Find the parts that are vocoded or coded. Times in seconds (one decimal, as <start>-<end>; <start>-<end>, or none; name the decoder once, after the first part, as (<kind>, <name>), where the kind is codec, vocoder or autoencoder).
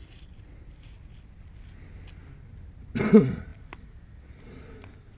none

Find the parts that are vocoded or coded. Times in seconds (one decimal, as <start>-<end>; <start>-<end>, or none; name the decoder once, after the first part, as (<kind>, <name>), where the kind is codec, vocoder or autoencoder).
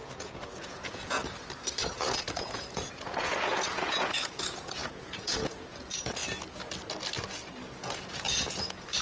0.0-1.2 (vocoder, Vocos); 1.9-6.2; 7.7-9.0